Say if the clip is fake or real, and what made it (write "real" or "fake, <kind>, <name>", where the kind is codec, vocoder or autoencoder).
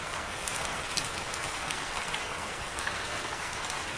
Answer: fake, codec, SNAC